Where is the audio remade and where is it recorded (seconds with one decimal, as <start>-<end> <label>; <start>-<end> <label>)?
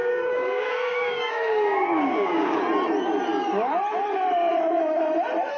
0.0-2.6 remade; 2.6-5.6 recorded